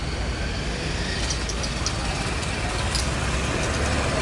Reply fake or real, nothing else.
real